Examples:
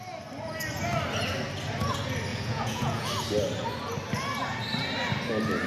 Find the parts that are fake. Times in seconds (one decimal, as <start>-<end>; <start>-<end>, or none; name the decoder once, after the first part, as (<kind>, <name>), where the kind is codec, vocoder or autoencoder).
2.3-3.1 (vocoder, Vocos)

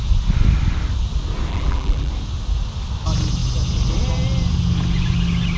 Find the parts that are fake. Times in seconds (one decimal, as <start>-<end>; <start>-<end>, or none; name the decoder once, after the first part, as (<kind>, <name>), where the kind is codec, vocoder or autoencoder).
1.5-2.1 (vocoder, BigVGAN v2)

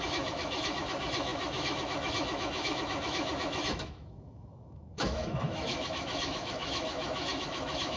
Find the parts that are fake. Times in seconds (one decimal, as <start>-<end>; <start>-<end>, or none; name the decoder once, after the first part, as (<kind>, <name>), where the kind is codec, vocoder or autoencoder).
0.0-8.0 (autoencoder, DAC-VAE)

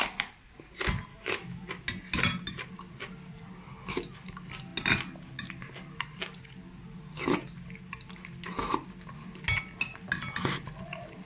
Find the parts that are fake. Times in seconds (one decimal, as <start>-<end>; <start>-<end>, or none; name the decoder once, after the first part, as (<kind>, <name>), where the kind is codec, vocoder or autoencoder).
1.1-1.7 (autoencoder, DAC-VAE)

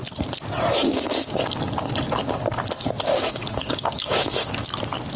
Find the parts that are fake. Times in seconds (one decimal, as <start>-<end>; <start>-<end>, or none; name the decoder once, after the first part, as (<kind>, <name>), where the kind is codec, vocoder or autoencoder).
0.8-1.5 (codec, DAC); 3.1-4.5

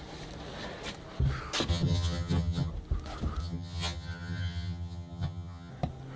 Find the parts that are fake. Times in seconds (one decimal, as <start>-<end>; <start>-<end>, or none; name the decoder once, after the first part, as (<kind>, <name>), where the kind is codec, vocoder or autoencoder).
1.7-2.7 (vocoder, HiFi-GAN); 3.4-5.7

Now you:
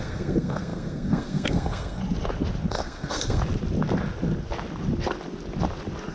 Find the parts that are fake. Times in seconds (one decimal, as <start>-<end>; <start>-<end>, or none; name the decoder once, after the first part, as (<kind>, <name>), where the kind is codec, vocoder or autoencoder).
0.0-2.0 (codec, SNAC); 2.7-3.4